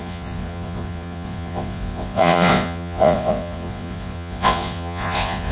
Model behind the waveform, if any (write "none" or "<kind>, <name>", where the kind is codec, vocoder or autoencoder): vocoder, Vocos